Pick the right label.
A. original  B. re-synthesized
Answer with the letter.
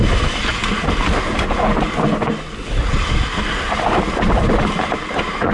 A